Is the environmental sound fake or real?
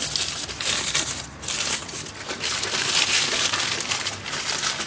real